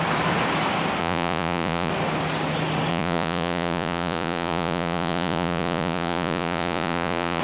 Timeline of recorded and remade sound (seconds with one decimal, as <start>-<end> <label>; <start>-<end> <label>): 0.0-1.0 recorded; 1.0-1.9 remade; 1.9-2.9 recorded; 2.9-7.4 remade